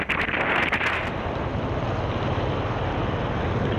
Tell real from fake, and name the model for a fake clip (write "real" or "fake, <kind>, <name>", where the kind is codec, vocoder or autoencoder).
real